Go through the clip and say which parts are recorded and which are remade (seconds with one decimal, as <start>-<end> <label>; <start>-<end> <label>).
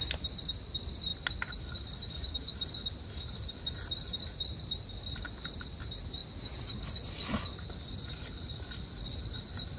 0.0-9.8 recorded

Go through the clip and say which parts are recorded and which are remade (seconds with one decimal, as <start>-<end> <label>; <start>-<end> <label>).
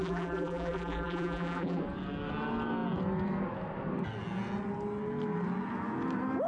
0.0-1.8 remade; 1.8-6.5 recorded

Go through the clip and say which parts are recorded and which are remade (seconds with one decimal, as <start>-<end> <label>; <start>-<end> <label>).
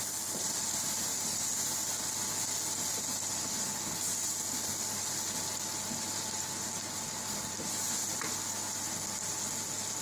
0.0-10.0 recorded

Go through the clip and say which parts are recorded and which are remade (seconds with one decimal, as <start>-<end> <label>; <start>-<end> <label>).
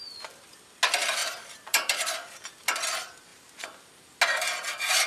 0.0-1.2 recorded; 1.2-2.0 remade; 2.0-3.3 recorded; 3.3-3.9 remade; 3.9-5.1 recorded